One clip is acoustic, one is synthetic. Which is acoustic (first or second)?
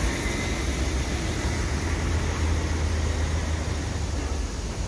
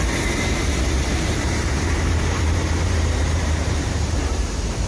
first